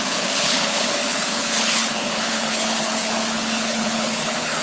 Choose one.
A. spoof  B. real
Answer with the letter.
A